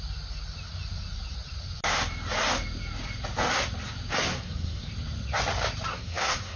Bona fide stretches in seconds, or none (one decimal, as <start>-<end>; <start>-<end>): 0.0-4.3; 4.9-5.9